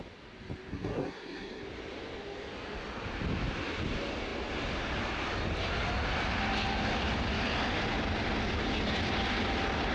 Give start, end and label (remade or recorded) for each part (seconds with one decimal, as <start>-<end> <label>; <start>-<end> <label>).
0.0-0.7 recorded; 0.7-1.6 remade; 1.6-9.9 recorded